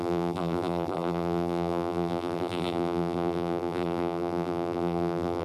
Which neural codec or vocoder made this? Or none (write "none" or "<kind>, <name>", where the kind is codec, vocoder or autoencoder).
vocoder, BigVGAN v2